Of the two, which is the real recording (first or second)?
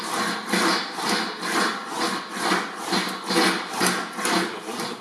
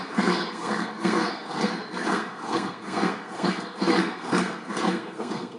first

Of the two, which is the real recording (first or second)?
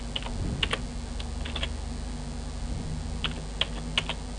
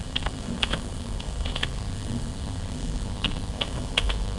first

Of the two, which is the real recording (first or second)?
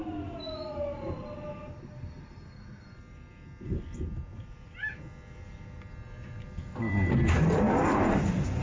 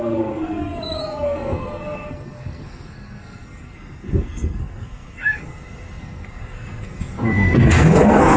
first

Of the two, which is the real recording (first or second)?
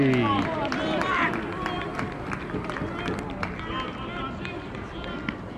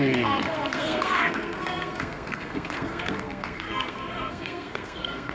first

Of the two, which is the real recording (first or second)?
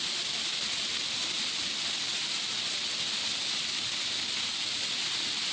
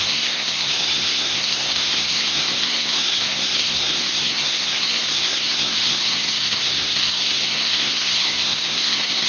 first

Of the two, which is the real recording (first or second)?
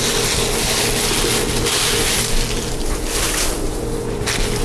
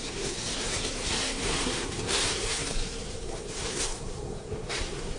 first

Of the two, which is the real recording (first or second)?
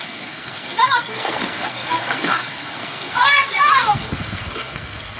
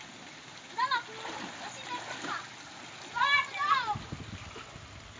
second